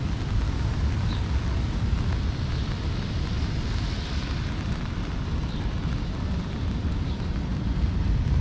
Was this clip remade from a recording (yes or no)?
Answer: no